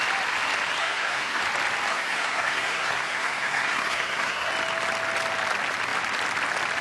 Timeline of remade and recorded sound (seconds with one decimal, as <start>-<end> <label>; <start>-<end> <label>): 0.0-0.8 recorded; 0.8-1.4 remade; 1.4-1.9 recorded; 1.9-4.5 remade; 4.5-6.8 recorded

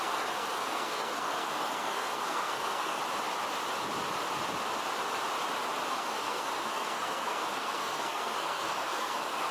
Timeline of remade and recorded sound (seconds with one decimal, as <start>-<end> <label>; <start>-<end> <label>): 0.0-3.0 remade; 3.0-5.9 recorded; 5.9-9.5 remade